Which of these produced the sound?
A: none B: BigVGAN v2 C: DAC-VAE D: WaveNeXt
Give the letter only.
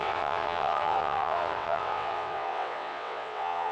D